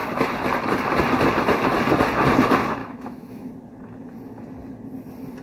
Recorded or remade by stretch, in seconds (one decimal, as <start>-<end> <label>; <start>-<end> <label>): 0.0-2.8 recorded; 2.8-3.5 remade; 3.5-5.4 recorded